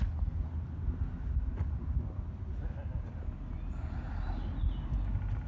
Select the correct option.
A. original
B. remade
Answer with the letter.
A